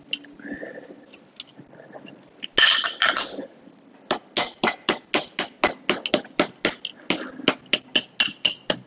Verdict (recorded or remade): recorded